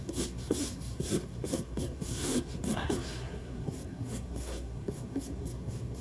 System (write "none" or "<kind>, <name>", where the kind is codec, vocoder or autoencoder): codec, SNAC